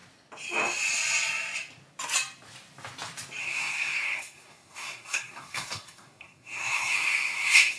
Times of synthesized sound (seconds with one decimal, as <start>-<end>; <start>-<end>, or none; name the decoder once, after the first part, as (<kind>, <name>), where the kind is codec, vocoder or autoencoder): 3.4-7.8 (codec, SNAC)

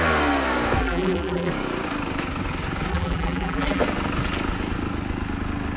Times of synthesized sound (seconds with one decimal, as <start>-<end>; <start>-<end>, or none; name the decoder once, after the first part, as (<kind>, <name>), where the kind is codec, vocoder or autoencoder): 0.8-1.5 (vocoder, BigVGAN v2); 2.9-3.8